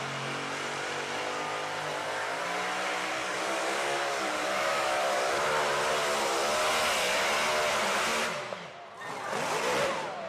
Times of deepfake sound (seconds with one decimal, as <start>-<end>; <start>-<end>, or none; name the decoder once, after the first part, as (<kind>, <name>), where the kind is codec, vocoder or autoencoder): 3.0-5.4 (codec, DAC)